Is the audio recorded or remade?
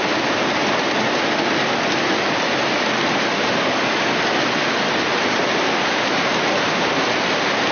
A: recorded